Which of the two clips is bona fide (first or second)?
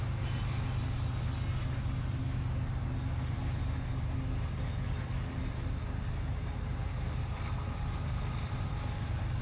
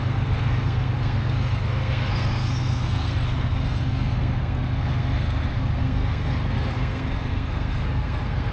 first